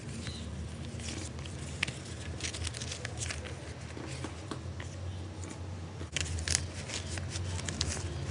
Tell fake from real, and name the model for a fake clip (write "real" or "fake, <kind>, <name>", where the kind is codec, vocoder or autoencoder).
real